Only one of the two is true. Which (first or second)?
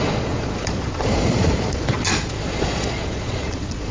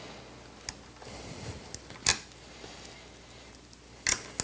second